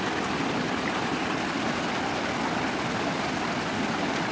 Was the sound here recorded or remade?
recorded